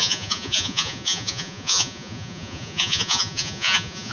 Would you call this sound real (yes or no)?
no